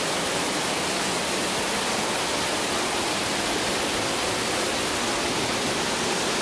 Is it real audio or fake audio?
real